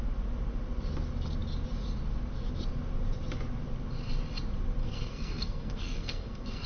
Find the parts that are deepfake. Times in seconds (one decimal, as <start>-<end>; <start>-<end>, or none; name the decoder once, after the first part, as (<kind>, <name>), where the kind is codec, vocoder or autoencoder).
4.8-6.7 (codec, SNAC)